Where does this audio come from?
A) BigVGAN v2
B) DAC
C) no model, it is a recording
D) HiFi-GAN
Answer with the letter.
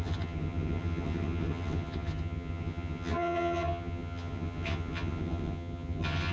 D